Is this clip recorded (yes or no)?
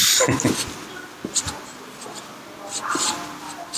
yes